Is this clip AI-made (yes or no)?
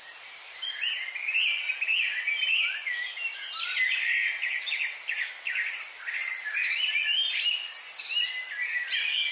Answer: no